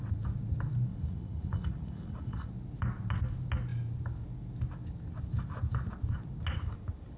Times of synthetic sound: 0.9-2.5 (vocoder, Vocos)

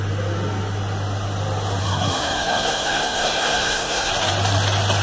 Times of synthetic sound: 1.8-4.1 (codec, SNAC)